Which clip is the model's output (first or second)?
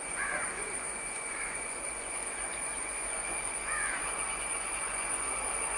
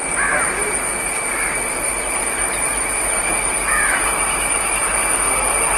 first